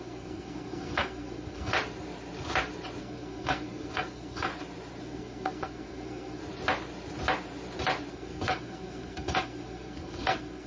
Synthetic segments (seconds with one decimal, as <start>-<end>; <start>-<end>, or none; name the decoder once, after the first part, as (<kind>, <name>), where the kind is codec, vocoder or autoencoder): 0.0-1.7 (codec, SNAC); 3.0-4.5; 5.0-6.4; 8.1-10.7